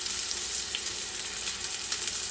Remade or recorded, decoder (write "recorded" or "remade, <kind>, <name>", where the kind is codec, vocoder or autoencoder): recorded